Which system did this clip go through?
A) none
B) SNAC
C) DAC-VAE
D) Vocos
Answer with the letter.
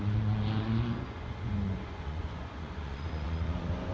D